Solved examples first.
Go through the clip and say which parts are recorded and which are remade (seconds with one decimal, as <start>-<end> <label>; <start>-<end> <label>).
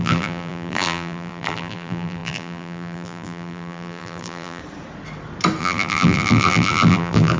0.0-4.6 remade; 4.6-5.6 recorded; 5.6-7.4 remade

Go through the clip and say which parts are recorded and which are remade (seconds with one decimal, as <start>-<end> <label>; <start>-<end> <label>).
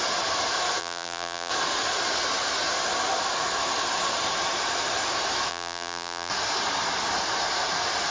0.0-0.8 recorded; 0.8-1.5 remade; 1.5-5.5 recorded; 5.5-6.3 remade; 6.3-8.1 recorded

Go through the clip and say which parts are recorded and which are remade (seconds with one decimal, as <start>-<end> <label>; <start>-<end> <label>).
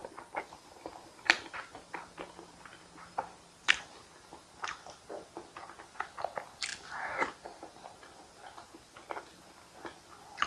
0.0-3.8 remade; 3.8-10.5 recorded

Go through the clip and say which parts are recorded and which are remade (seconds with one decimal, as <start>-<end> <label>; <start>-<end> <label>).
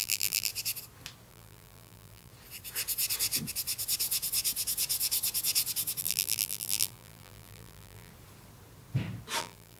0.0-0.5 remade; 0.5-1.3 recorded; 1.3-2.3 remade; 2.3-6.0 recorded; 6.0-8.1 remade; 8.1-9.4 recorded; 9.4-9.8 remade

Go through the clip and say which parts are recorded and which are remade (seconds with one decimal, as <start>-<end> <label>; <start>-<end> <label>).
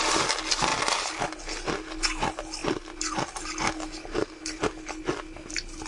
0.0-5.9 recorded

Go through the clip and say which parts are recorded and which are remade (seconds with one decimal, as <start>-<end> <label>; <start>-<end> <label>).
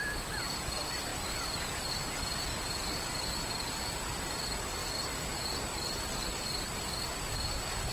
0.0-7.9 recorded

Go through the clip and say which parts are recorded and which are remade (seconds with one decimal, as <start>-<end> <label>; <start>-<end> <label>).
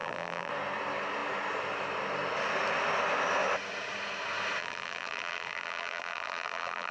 0.0-0.5 remade; 0.5-4.6 recorded; 4.6-6.9 remade